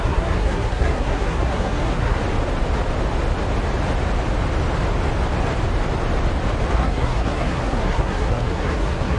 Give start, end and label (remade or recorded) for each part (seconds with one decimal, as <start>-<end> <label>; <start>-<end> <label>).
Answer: 0.0-2.2 remade; 2.2-6.7 recorded; 6.7-9.2 remade